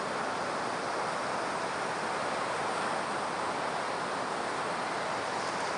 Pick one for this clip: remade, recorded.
recorded